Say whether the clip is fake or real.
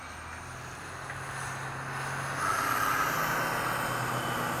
real